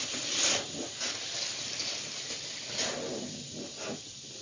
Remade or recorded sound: remade